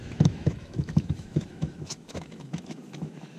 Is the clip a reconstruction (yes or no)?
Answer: yes